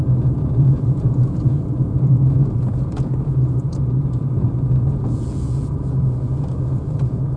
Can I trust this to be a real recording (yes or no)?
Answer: no